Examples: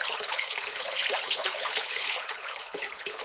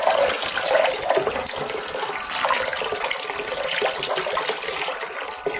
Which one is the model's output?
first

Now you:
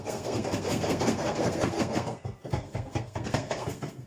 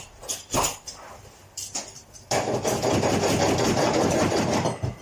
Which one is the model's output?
first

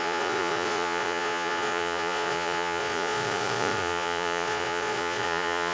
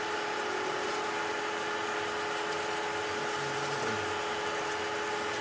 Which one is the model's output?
first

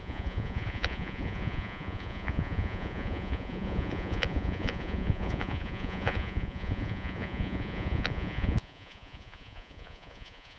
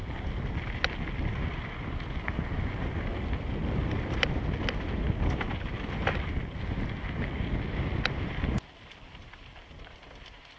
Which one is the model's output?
first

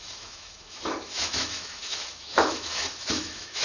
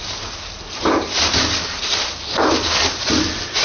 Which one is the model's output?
first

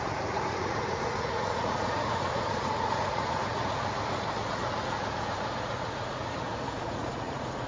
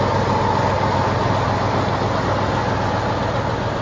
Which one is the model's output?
first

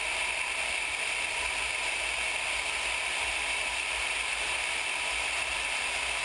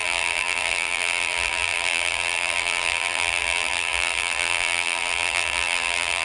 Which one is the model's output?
second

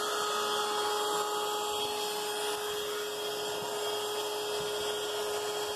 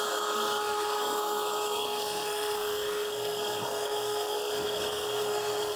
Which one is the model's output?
second